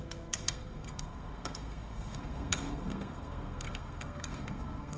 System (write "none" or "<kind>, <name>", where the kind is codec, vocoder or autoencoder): codec, SNAC